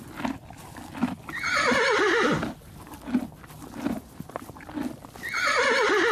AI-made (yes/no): no